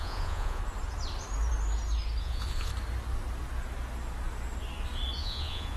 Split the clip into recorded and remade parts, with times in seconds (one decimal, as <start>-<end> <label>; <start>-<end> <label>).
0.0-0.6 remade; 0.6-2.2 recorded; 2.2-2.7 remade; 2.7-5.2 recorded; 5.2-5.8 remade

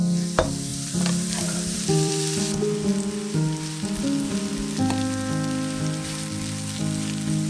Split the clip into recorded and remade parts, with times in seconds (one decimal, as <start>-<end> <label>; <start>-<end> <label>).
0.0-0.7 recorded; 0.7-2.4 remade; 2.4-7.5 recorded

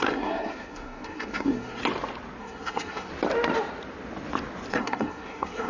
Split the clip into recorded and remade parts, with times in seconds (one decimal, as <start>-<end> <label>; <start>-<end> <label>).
0.0-1.8 remade; 1.8-2.4 recorded; 2.4-3.1 remade; 3.1-4.7 recorded; 4.7-5.7 remade

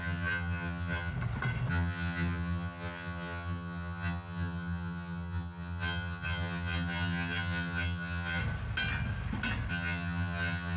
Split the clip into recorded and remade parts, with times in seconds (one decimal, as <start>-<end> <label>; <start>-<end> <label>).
0.0-1.1 remade; 1.1-1.7 recorded; 1.7-8.4 remade; 8.4-9.7 recorded; 9.7-10.8 remade

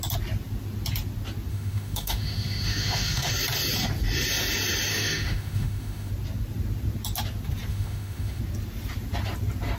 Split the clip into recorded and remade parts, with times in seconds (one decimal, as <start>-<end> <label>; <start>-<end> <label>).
0.0-1.5 recorded; 1.5-3.3 remade; 3.3-4.9 recorded; 4.9-6.1 remade; 6.1-7.7 recorded; 7.7-8.4 remade; 8.4-9.8 recorded